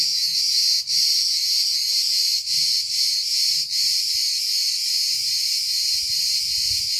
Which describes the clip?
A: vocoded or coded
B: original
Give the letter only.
B